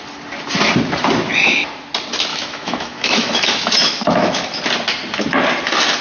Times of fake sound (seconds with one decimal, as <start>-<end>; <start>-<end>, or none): 2.3-4.6